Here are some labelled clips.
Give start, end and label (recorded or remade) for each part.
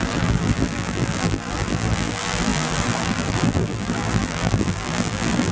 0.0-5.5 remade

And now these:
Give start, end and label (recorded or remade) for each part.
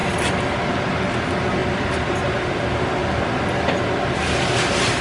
0.0-0.7 remade; 0.7-1.6 recorded; 1.6-2.1 remade; 2.1-3.0 recorded; 3.0-4.2 remade; 4.2-5.0 recorded